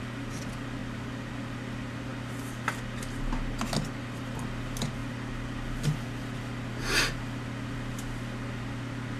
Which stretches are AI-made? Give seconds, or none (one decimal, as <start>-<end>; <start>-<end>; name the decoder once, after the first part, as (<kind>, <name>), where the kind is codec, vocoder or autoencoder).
none